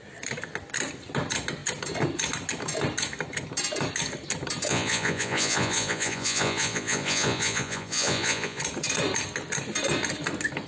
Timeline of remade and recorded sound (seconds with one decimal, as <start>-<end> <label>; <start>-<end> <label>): 0.0-4.7 recorded; 4.7-8.6 remade; 8.6-10.7 recorded